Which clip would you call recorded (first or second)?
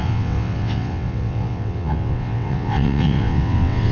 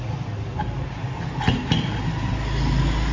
second